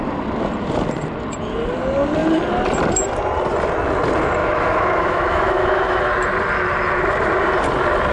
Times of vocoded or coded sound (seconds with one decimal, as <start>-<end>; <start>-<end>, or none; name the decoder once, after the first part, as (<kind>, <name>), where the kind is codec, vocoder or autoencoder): 4.4-6.0 (autoencoder, DAC-VAE)